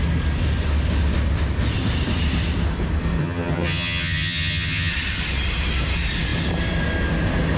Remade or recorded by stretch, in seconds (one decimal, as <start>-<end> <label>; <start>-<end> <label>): 0.0-3.2 recorded; 3.2-4.9 remade; 4.9-7.6 recorded